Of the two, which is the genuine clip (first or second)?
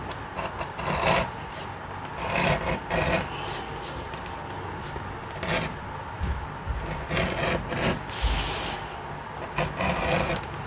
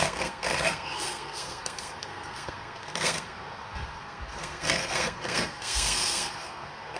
first